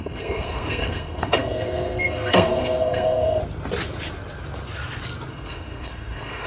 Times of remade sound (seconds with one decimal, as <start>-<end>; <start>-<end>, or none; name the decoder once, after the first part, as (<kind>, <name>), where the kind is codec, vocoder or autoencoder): 0.0-3.4 (codec, SNAC); 5.3-6.5